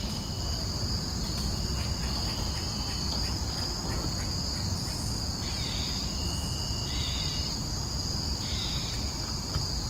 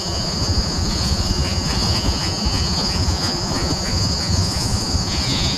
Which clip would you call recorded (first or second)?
first